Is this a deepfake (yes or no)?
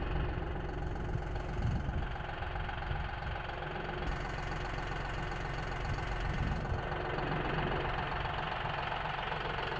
no